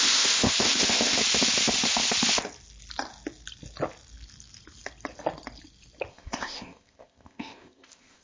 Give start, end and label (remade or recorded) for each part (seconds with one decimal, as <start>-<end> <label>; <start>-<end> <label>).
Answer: 0.0-1.2 remade; 1.2-6.1 recorded; 6.1-8.2 remade